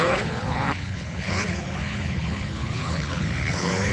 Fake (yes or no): yes